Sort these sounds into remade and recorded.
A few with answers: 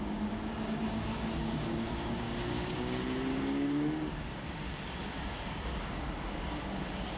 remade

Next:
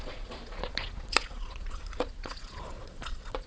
remade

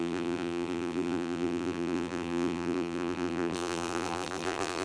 remade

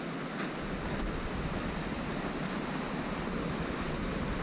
recorded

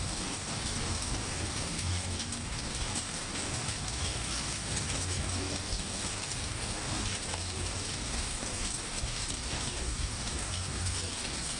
remade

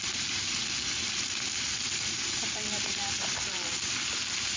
remade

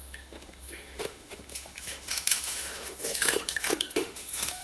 remade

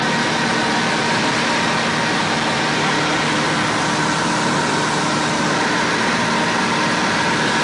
recorded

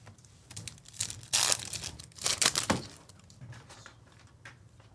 remade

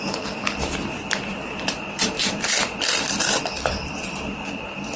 remade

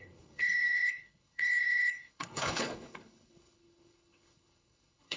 remade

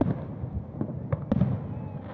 recorded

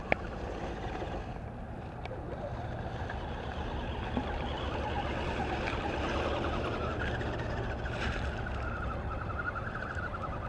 recorded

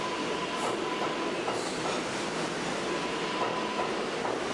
recorded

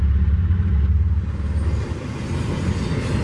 recorded